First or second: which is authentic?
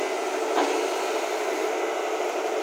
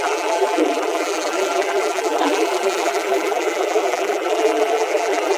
first